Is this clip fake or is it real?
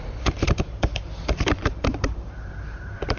fake